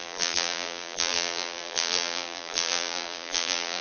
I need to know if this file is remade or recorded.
remade